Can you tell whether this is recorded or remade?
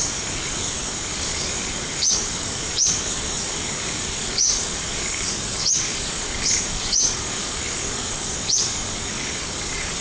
remade